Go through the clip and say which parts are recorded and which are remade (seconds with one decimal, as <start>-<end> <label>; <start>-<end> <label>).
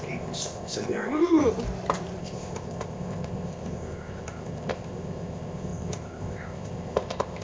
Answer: 0.0-1.4 remade; 1.4-2.2 recorded; 2.2-7.4 remade